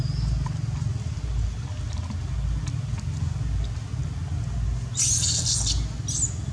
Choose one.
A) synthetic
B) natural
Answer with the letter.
B